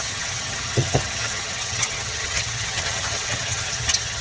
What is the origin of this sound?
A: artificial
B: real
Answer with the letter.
A